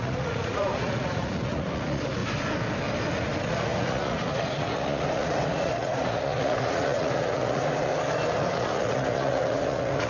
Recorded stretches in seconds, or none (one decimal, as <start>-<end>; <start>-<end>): 2.2-3.1; 7.9-8.4